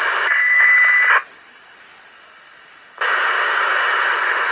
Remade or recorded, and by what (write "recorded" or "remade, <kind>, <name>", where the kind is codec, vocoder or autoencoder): recorded